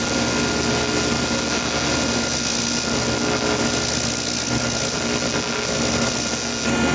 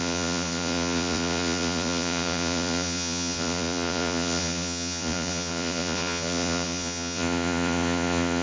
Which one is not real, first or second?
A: second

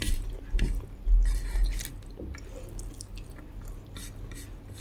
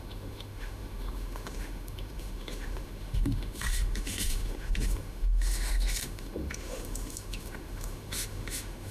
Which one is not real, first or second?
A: second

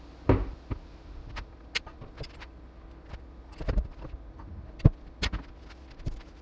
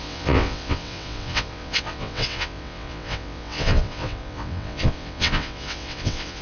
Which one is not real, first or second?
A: second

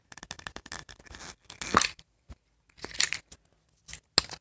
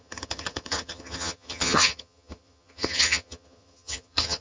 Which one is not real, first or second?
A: second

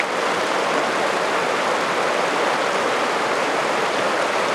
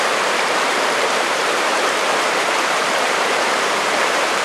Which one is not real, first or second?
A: second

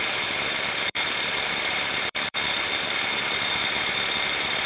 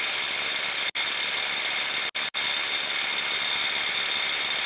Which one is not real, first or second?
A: first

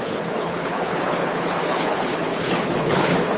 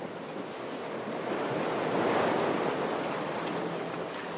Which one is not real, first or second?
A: first